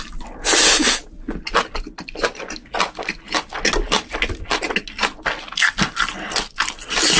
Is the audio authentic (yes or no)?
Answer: yes